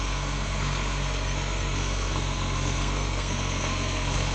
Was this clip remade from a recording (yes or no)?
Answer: yes